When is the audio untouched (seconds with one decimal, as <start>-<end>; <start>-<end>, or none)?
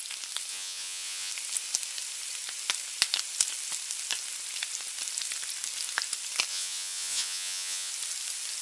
0.0-0.5; 1.3-6.5; 7.9-8.6